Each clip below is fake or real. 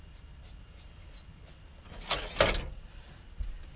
real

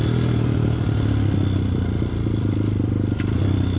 fake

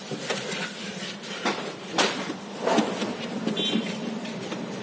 fake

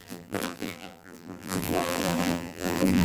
fake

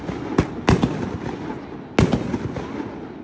real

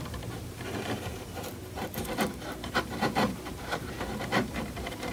fake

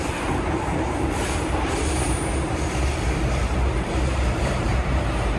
fake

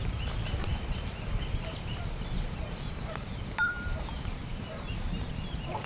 fake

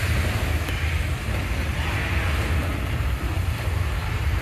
real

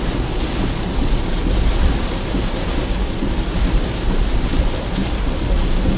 fake